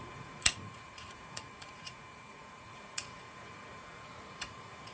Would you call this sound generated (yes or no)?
yes